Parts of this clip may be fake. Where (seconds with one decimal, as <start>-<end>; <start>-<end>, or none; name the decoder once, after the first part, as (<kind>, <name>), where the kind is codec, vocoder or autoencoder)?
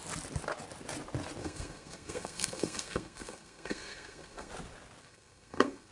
1.4-4.5 (codec, SNAC); 5.0-5.9